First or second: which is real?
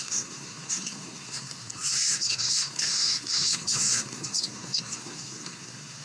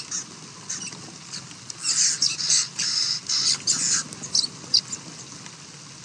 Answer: second